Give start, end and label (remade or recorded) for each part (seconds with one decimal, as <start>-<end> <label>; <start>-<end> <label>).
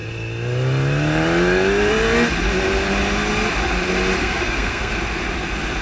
0.0-4.2 recorded; 4.2-4.9 remade; 4.9-5.8 recorded